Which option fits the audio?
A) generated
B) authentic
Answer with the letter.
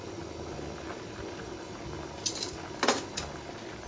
B